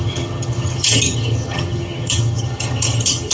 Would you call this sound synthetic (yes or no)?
yes